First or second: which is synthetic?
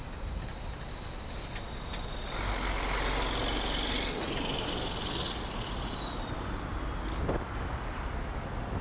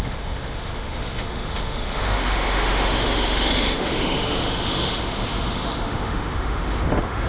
second